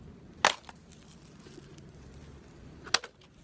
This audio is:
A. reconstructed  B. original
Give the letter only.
B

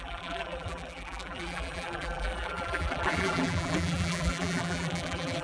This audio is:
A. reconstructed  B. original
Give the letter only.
A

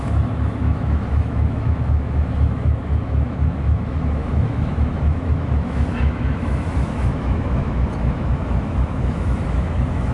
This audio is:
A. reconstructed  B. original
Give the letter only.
A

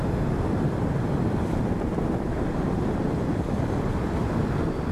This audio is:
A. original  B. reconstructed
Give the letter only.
A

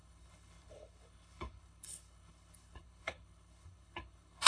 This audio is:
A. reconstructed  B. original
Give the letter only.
A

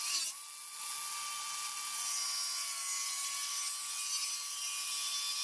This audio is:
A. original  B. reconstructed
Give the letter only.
A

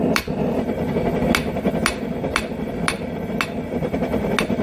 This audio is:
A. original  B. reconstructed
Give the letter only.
A